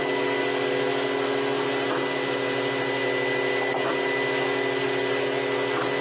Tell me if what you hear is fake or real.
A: real